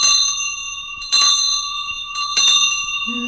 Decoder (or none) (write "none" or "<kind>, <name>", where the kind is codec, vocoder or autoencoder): vocoder, Vocos